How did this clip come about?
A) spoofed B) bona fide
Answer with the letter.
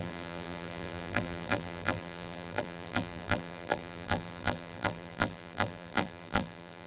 A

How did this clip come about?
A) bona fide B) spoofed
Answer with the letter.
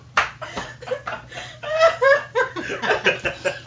A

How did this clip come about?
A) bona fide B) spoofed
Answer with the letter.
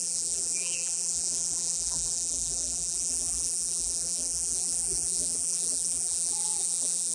B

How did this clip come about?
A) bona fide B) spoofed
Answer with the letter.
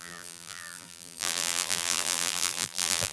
B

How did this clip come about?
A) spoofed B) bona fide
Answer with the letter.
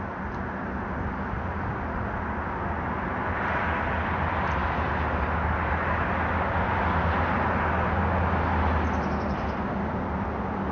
B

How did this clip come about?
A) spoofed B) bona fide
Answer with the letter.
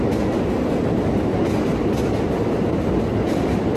B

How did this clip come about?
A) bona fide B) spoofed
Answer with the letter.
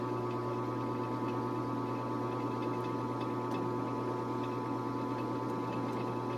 A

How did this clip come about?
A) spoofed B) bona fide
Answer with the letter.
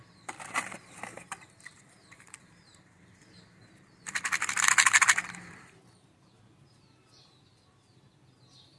A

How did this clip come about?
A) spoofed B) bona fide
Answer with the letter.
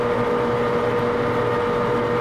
B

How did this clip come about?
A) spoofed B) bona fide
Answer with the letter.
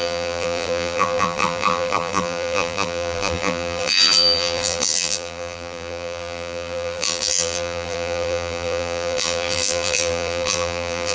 A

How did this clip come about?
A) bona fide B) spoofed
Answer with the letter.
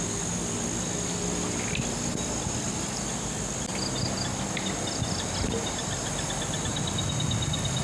A